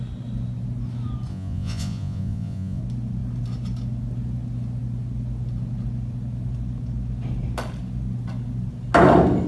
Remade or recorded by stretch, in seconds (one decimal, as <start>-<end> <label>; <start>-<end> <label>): 0.0-1.3 recorded; 1.3-2.8 remade; 2.8-9.5 recorded